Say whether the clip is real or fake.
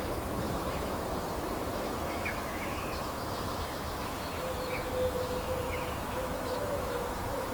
fake